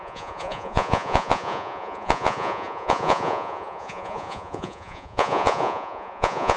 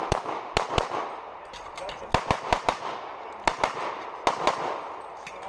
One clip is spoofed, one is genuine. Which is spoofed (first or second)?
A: first